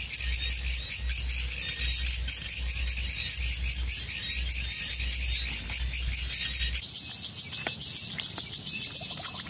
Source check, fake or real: real